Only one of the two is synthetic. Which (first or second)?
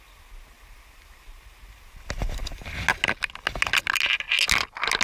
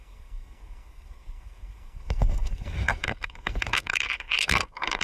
second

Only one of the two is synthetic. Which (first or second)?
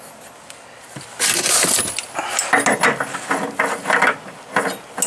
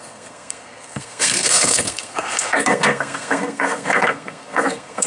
second